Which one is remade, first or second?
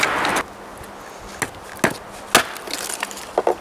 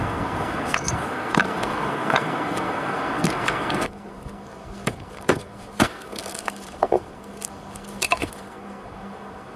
second